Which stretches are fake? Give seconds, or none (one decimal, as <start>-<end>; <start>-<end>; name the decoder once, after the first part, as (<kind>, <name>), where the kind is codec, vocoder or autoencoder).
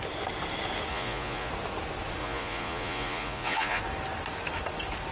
0.9-1.5 (vocoder, Vocos); 2.2-3.8